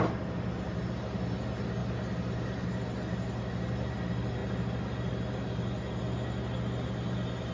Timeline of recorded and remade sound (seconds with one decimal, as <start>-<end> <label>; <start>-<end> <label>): 0.0-7.5 recorded